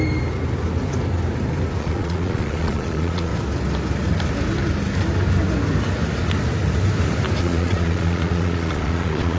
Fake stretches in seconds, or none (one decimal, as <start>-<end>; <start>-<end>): 1.8-3.3; 7.4-9.4